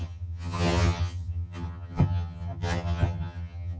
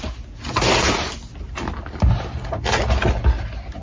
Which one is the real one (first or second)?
second